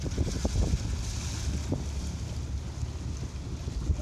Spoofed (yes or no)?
no